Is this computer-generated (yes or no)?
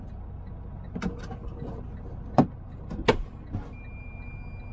no